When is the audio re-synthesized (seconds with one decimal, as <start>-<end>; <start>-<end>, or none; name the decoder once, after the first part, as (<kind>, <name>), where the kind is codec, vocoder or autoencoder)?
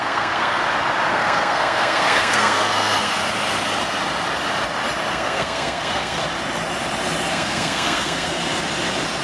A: 0.0-0.6 (codec, SNAC); 1.1-3.2; 5.1-6.2; 7.3-8.4